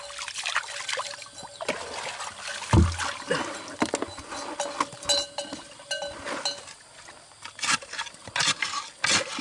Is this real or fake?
real